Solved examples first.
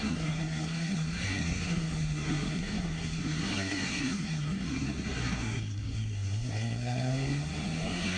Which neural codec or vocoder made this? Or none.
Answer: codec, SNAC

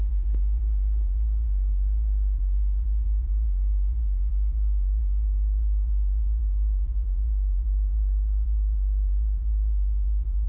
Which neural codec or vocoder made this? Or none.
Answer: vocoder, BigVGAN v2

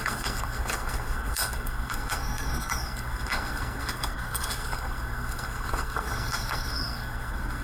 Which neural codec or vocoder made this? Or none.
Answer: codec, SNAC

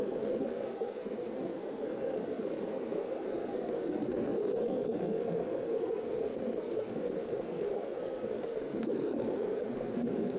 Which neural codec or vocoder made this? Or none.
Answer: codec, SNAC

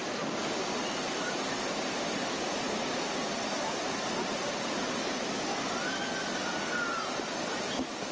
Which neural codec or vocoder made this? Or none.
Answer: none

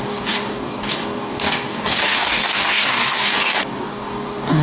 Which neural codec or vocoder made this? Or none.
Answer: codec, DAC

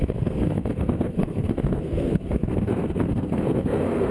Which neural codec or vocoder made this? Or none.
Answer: codec, SNAC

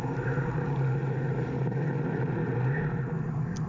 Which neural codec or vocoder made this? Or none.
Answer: none